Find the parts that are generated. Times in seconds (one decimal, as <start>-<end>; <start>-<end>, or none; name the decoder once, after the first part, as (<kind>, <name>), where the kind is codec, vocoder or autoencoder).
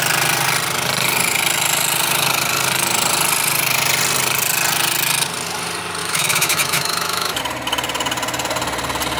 6.0-7.4 (autoencoder, DAC-VAE)